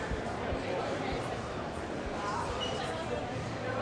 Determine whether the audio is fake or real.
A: fake